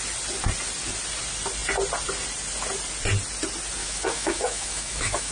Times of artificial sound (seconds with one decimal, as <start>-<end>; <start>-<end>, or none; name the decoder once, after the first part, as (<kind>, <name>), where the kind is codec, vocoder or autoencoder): 3.8-5.3 (autoencoder, DAC-VAE)